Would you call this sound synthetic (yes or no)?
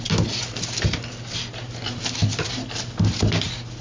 no